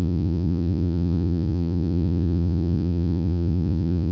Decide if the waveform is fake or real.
fake